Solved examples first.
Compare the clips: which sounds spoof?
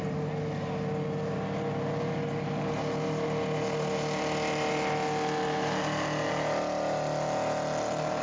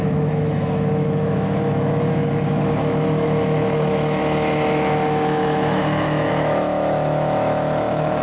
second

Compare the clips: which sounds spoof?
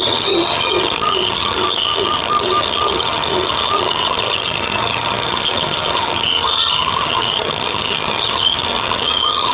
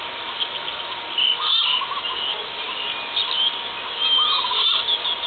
first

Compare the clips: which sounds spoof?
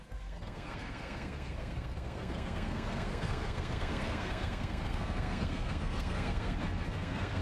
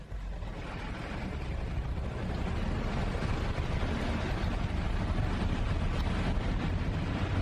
first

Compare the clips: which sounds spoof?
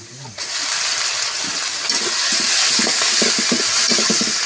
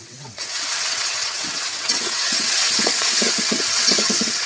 second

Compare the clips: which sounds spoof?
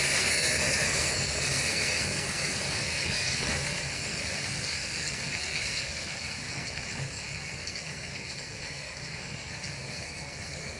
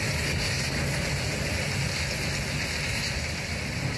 first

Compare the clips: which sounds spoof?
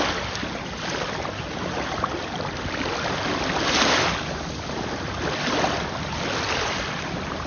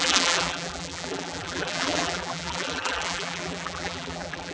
second